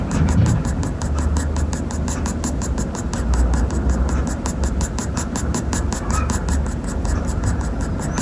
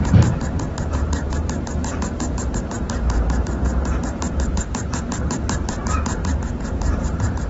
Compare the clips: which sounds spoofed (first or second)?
second